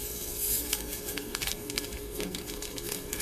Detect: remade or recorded remade